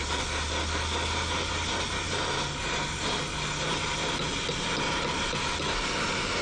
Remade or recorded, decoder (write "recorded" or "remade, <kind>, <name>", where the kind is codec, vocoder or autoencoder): recorded